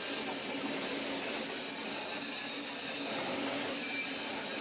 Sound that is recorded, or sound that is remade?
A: recorded